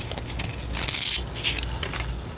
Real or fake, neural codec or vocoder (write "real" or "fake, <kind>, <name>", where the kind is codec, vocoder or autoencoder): real